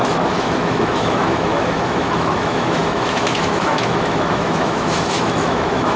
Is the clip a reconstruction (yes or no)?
yes